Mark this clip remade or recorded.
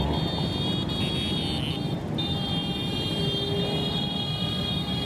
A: recorded